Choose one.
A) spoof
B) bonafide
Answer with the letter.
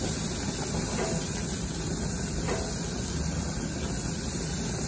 B